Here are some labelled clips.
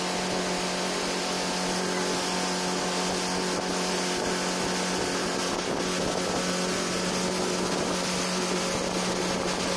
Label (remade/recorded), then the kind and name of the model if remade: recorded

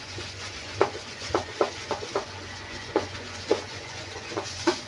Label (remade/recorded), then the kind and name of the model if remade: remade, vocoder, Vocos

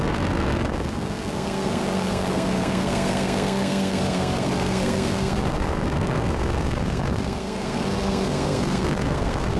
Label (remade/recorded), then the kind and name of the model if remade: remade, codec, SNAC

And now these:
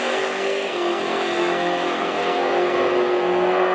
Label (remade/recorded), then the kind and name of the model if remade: remade, codec, SNAC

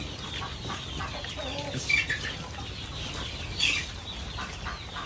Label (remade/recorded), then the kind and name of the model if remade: recorded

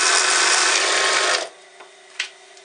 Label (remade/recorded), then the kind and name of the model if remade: recorded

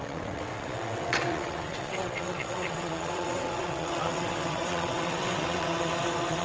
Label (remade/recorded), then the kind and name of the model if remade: remade, vocoder, WaveNeXt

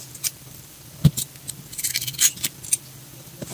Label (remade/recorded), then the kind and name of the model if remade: remade, vocoder, BigVGAN v2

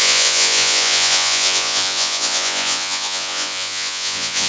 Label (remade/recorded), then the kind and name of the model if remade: remade, vocoder, Vocos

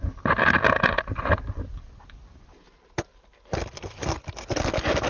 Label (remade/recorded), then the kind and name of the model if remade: recorded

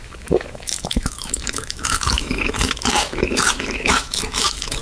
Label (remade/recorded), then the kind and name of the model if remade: remade, autoencoder, DAC-VAE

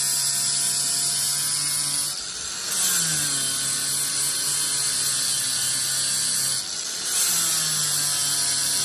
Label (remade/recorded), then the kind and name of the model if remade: recorded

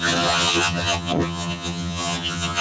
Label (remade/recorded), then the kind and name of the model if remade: remade, vocoder, HiFi-GAN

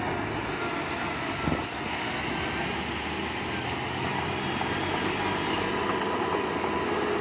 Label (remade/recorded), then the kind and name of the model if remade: recorded